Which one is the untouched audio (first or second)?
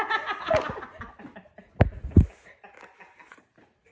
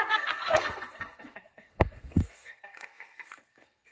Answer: first